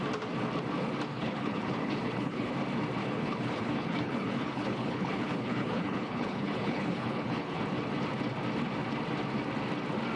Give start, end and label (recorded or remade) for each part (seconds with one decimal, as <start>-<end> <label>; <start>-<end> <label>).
0.0-1.1 recorded; 1.1-2.5 remade; 2.5-3.0 recorded; 3.0-7.6 remade; 7.6-10.2 recorded